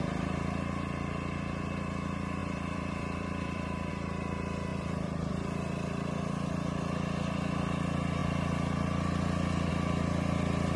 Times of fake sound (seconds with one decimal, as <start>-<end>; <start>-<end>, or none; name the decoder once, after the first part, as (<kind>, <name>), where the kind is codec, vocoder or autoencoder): 2.4-3.9 (vocoder, BigVGAN v2); 4.7-5.3